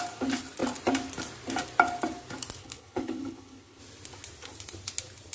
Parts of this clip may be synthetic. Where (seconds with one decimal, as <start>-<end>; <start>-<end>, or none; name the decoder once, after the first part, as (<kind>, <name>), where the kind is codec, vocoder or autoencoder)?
2.6-3.8 (codec, HILCodec)